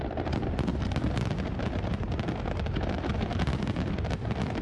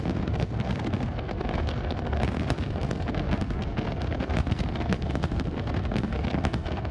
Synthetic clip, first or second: second